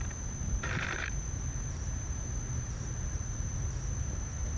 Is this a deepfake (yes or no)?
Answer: yes